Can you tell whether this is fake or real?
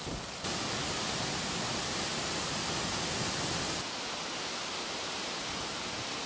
fake